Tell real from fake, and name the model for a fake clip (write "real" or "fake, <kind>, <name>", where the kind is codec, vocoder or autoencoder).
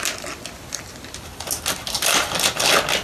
real